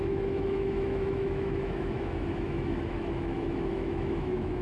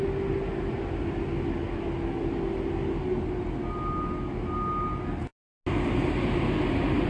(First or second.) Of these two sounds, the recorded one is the second